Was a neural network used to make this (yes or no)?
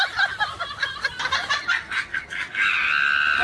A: no